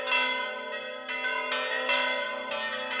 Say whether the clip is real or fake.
real